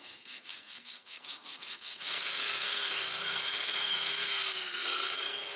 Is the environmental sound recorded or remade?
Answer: remade